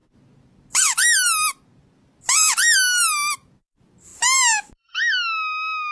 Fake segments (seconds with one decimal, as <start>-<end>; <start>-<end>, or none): none